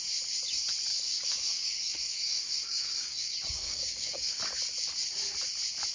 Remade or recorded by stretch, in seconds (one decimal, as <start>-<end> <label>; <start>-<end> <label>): 0.0-0.9 recorded; 0.9-4.4 remade; 4.4-5.9 recorded